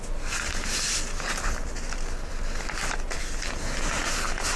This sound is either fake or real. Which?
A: real